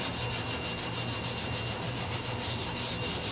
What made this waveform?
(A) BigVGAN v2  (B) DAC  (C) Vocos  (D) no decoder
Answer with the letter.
D